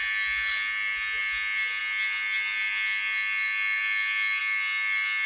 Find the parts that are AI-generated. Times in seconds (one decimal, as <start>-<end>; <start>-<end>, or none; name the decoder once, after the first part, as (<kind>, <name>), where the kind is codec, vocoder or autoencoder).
none